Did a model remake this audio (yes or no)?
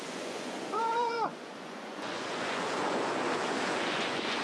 yes